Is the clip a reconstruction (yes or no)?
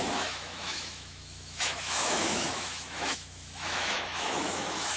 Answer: yes